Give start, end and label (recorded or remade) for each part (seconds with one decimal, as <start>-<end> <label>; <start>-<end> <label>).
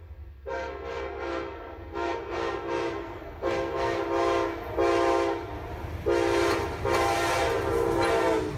0.0-4.0 remade; 4.0-8.6 recorded